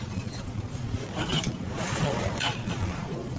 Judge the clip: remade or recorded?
remade